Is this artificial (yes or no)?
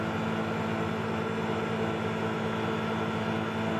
no